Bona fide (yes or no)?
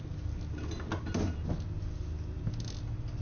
yes